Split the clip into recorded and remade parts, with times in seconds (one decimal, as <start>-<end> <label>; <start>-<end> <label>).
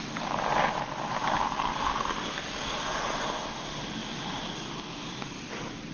0.0-4.0 remade; 4.0-5.0 recorded; 5.0-5.9 remade